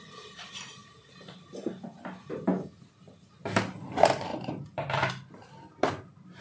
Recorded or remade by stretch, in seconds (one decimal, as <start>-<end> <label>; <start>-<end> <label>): 0.0-0.8 recorded; 0.8-1.7 remade; 1.7-4.3 recorded; 4.3-5.1 remade; 5.1-6.4 recorded